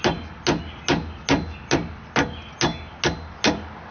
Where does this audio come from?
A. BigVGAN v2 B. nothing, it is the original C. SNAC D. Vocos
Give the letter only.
B